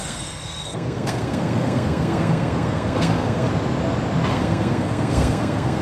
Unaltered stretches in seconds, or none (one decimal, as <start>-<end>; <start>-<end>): 3.5-4.3